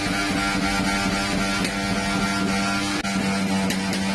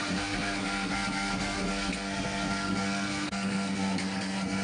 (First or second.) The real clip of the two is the first